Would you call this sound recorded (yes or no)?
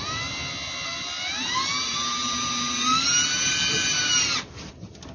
yes